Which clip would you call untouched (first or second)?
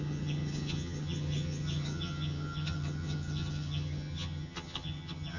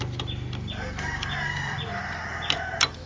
second